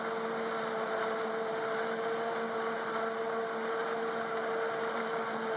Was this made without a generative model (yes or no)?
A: yes